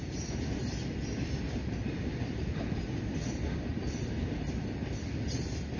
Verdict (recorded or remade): recorded